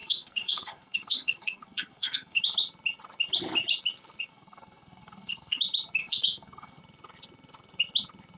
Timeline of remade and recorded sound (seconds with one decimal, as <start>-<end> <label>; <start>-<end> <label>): 0.0-2.4 remade; 2.4-4.3 recorded; 4.3-5.6 remade; 5.6-6.0 recorded; 6.0-6.8 remade; 6.8-8.4 recorded